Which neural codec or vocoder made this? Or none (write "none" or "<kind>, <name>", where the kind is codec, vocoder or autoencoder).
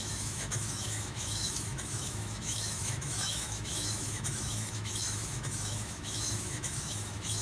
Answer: autoencoder, DAC-VAE